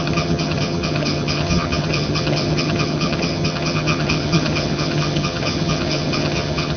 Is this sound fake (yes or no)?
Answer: yes